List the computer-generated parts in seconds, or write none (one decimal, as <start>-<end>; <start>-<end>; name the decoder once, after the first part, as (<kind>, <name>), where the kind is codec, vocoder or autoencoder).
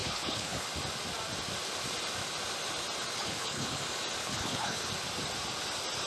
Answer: 0.0-0.7 (codec, HILCodec); 3.1-3.8; 4.2-4.9